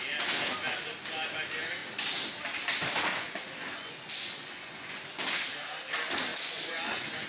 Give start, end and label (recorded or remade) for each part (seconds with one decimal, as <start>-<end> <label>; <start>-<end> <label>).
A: 0.0-3.1 recorded; 3.1-5.1 remade; 5.1-6.3 recorded; 6.3-7.3 remade